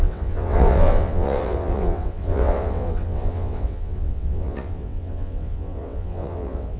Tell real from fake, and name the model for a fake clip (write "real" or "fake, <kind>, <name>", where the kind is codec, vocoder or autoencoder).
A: fake, vocoder, WaveNeXt